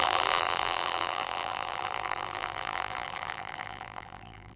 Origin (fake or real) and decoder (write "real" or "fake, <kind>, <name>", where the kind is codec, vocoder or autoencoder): fake, vocoder, BigVGAN v2